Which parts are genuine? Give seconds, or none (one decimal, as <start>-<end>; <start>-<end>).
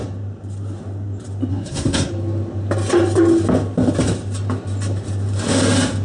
0.0-1.5; 2.1-6.0